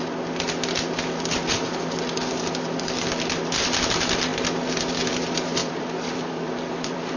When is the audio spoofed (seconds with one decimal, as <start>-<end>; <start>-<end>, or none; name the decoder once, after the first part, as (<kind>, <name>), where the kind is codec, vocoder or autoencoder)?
5.6-7.2 (vocoder, BigVGAN v2)